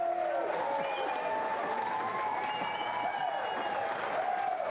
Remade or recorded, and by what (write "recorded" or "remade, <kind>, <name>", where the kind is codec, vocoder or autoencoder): recorded